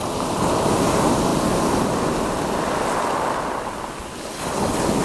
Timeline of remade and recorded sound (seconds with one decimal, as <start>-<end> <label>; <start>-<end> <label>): 0.0-5.0 recorded